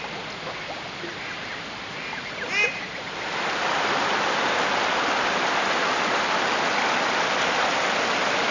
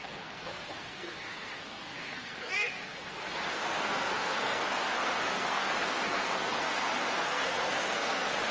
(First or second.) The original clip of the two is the first